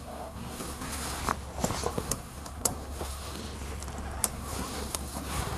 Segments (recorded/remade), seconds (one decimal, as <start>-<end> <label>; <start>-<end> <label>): 0.0-1.2 remade; 1.2-1.9 recorded; 1.9-3.4 remade; 3.4-4.3 recorded; 4.3-5.6 remade

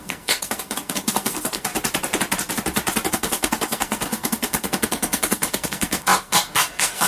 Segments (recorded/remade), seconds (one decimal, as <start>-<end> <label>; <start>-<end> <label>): 0.0-1.7 remade; 1.7-3.1 recorded; 3.1-7.1 remade

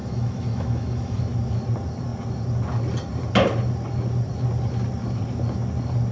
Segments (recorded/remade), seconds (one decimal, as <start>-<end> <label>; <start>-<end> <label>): 0.0-1.2 remade; 1.2-6.1 recorded

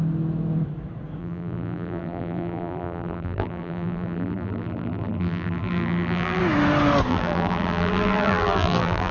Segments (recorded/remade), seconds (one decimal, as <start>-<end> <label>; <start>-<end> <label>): 0.0-1.2 recorded; 1.2-6.4 remade; 6.4-7.1 recorded; 7.1-9.1 remade

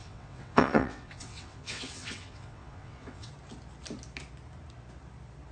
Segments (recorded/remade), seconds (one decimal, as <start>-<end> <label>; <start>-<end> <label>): 0.0-3.3 remade; 3.3-5.5 recorded